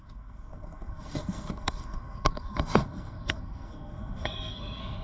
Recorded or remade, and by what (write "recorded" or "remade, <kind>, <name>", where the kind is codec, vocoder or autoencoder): remade, codec, SNAC